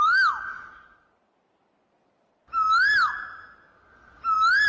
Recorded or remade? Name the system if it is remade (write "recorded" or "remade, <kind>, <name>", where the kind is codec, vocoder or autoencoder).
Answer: recorded